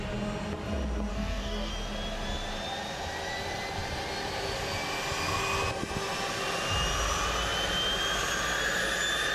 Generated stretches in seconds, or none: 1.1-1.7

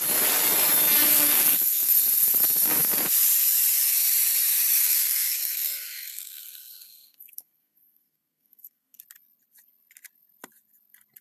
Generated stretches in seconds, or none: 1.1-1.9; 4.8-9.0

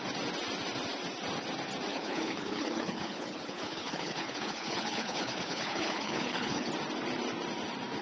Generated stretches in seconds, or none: 1.9-6.7

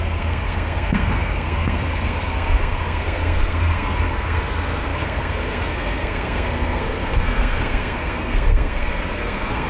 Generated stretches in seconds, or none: 0.0-9.7

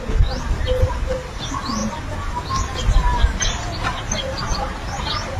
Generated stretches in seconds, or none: none

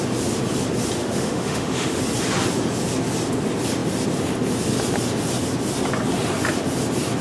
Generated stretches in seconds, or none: 1.0-2.0